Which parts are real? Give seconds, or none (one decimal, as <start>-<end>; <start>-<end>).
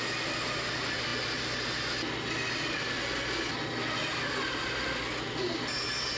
0.0-6.2